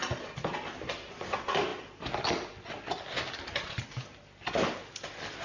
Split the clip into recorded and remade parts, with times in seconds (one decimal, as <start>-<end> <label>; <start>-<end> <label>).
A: 0.0-5.4 recorded